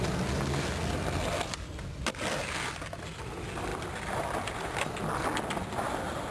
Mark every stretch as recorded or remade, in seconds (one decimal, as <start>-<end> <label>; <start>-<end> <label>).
0.0-6.3 recorded